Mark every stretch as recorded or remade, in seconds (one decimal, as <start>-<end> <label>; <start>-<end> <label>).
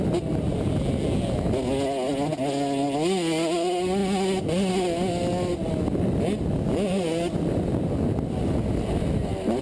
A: 0.0-9.6 recorded